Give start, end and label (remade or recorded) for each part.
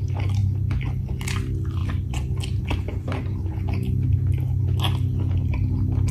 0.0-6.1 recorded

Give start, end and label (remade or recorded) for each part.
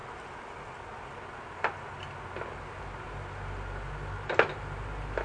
0.0-5.2 recorded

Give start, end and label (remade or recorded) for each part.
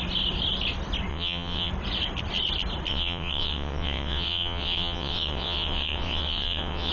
0.0-1.1 recorded; 1.1-1.7 remade; 1.7-2.9 recorded; 2.9-6.9 remade